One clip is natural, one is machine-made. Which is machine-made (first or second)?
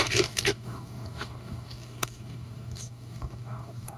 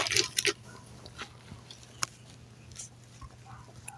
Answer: first